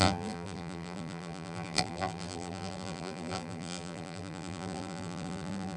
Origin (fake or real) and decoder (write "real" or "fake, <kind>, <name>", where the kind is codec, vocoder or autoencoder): fake, vocoder, BigVGAN v2